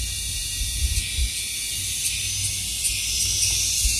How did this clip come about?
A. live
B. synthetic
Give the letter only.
A